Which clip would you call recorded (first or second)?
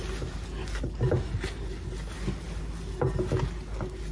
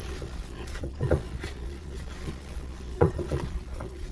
first